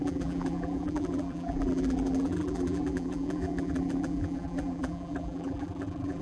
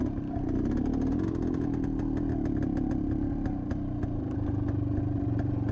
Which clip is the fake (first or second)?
first